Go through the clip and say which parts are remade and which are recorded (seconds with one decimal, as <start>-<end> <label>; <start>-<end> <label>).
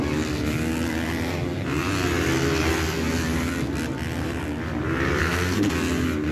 0.0-5.2 recorded; 5.2-5.7 remade; 5.7-6.3 recorded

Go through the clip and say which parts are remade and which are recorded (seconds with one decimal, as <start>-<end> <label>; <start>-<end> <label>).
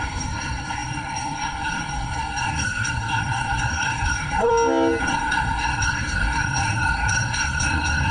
0.0-4.5 remade; 4.5-5.0 recorded; 5.0-8.1 remade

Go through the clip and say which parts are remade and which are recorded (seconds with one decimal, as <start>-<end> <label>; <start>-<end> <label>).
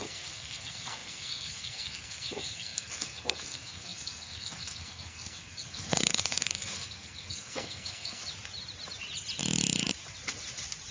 0.0-8.2 remade; 8.2-10.9 recorded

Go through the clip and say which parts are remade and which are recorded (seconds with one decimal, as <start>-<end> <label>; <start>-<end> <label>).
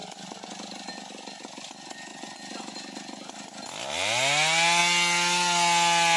0.0-6.2 recorded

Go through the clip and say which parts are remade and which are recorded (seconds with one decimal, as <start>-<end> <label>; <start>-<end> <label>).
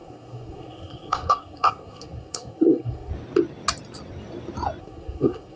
0.0-3.1 remade; 3.1-4.8 recorded; 4.8-5.6 remade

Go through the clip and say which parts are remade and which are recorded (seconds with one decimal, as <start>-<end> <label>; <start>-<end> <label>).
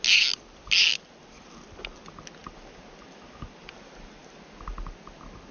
0.0-5.5 recorded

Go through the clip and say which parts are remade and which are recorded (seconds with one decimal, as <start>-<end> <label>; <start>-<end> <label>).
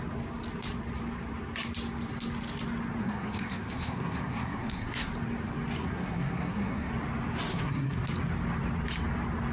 0.0-3.0 recorded; 3.0-5.1 remade; 5.1-5.8 recorded; 5.8-6.9 remade; 6.9-7.5 recorded; 7.5-8.0 remade; 8.0-9.5 recorded